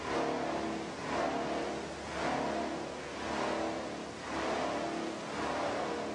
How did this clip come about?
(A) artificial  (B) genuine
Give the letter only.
B